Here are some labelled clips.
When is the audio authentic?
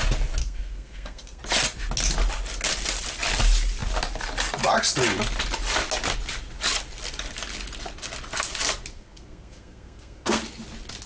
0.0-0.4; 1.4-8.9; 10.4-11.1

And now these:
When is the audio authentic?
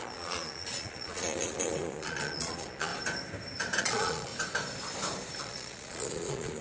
2.9-3.8; 4.3-5.4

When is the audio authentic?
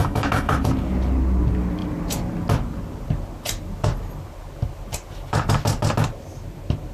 0.5-6.9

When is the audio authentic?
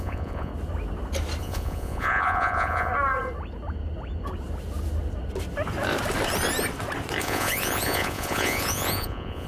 0.5-1.4; 2.9-7.2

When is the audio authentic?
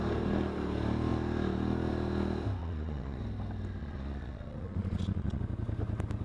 0.0-2.6; 3.2-3.8; 5.4-6.2